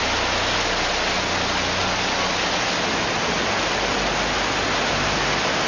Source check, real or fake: real